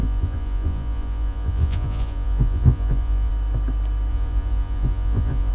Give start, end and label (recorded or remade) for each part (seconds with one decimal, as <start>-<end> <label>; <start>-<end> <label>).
0.0-3.3 remade; 3.3-4.1 recorded; 4.1-5.5 remade